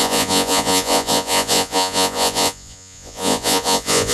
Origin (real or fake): fake